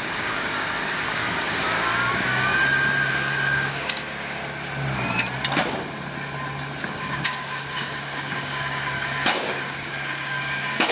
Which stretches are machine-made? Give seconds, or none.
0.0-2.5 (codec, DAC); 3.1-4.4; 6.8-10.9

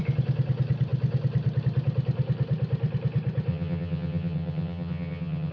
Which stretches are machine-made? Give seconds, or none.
3.5-5.5 (vocoder, HiFi-GAN)

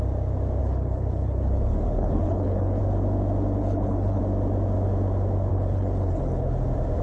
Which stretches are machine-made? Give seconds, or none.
0.6-2.8 (codec, HILCodec); 3.6-4.2; 5.5-6.5

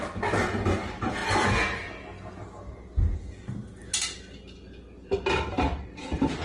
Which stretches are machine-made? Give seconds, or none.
none